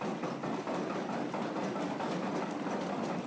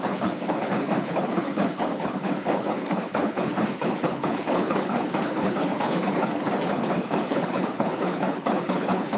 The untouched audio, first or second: first